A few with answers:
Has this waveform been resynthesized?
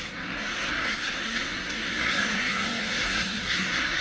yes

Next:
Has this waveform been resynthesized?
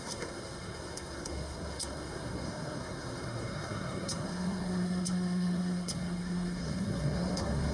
yes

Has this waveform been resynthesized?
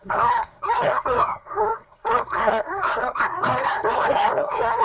yes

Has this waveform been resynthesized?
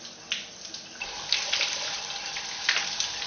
no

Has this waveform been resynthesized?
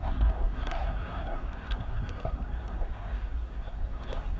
yes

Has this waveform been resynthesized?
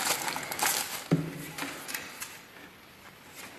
no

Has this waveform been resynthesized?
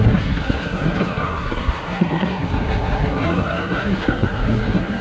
yes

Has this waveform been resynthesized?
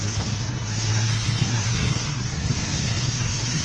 yes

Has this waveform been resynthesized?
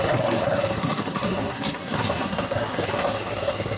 yes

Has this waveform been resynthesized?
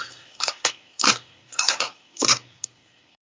yes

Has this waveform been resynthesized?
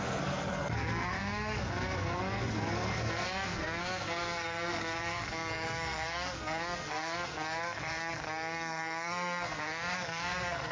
yes